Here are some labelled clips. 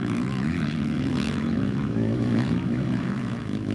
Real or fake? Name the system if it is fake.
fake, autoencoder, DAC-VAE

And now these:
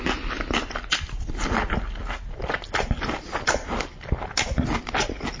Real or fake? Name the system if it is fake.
real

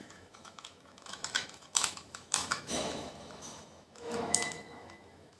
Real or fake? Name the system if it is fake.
fake, autoencoder, DAC-VAE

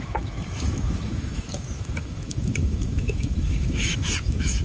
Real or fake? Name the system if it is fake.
fake, autoencoder, DAC-VAE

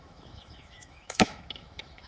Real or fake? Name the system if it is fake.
fake, autoencoder, DAC-VAE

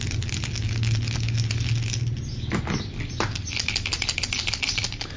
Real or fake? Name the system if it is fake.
real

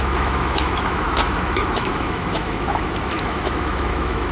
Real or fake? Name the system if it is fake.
fake, autoencoder, DAC-VAE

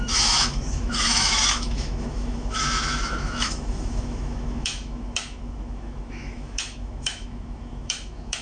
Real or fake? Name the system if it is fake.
fake, autoencoder, DAC-VAE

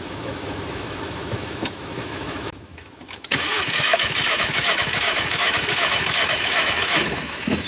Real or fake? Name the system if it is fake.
fake, autoencoder, DAC-VAE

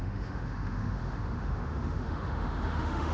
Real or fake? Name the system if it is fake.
fake, autoencoder, DAC-VAE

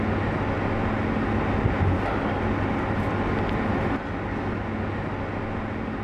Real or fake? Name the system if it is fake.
real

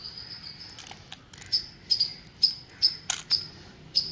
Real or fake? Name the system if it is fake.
real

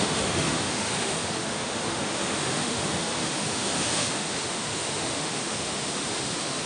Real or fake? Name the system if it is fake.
fake, autoencoder, DAC-VAE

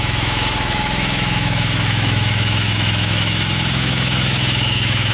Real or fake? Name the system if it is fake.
fake, autoencoder, DAC-VAE